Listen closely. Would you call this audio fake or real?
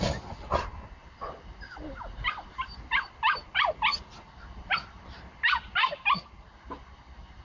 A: real